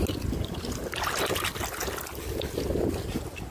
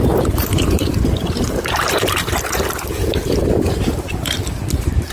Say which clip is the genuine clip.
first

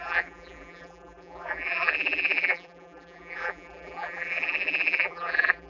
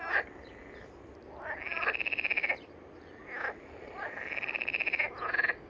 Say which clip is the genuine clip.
second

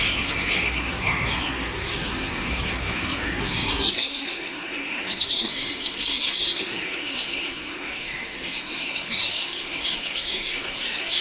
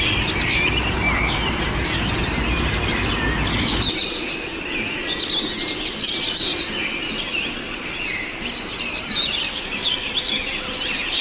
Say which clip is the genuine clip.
second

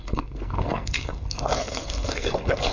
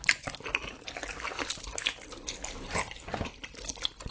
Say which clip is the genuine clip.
second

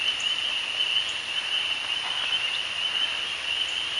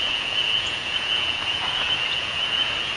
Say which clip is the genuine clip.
first